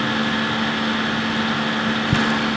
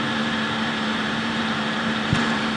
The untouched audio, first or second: first